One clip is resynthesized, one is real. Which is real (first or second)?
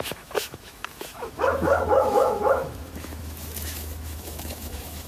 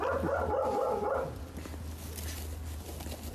second